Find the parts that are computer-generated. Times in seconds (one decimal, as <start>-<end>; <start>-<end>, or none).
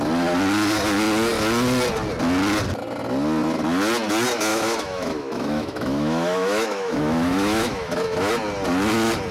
4.5-8.3